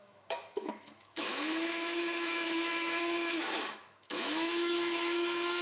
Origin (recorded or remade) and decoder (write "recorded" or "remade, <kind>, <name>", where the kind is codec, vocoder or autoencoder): remade, autoencoder, DAC-VAE